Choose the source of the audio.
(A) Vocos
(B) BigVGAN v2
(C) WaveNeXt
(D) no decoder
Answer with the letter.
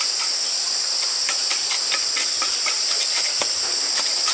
D